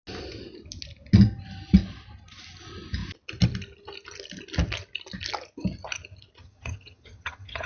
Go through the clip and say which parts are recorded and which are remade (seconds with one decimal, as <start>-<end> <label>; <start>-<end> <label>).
0.0-6.4 recorded; 6.4-7.7 remade

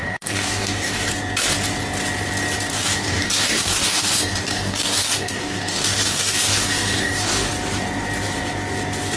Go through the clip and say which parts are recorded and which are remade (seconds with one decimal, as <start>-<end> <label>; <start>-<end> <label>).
0.0-1.1 remade; 1.1-2.7 recorded; 2.7-7.5 remade; 7.5-9.2 recorded